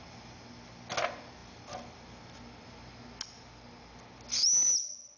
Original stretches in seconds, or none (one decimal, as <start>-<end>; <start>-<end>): 0.0-5.2